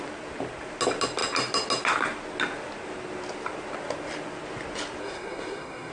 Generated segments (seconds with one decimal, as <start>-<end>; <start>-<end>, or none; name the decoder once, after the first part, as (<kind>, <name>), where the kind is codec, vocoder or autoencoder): 5.0-5.9 (codec, SNAC)